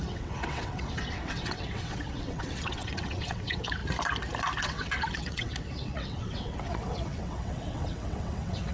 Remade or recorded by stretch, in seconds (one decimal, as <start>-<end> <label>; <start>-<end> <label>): 0.0-3.8 remade; 3.8-4.6 recorded; 4.6-8.7 remade

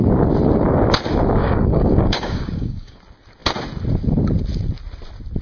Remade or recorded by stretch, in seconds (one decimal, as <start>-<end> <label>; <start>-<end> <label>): 0.0-1.4 recorded; 1.4-3.0 remade; 3.0-5.4 recorded

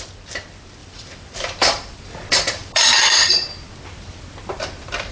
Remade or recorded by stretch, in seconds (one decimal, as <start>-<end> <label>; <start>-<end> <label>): 0.0-0.8 recorded; 0.8-3.3 remade; 3.3-5.1 recorded

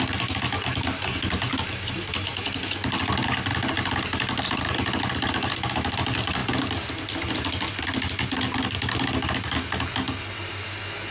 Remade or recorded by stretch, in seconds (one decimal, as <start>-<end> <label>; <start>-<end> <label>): 0.0-11.1 recorded

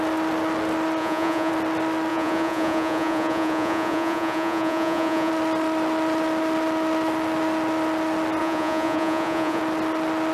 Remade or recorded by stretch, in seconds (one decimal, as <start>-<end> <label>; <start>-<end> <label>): 0.0-1.0 recorded; 1.0-1.5 remade; 1.5-2.1 recorded; 2.1-5.3 remade; 5.3-8.4 recorded; 8.4-9.6 remade; 9.6-10.3 recorded

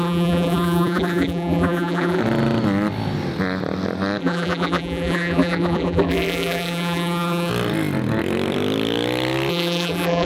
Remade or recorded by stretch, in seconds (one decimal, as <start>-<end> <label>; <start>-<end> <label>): 0.0-2.2 remade; 2.2-4.2 recorded; 4.2-7.5 remade; 7.5-9.5 recorded; 9.5-10.3 remade

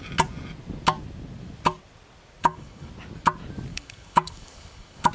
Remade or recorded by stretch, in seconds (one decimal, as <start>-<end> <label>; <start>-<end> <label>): 0.0-2.4 recorded; 2.4-2.9 remade; 2.9-3.7 recorded; 3.7-5.1 remade